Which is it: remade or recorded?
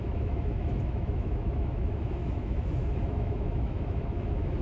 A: remade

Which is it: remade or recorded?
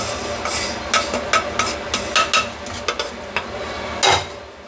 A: recorded